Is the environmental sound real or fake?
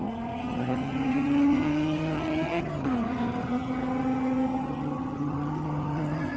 fake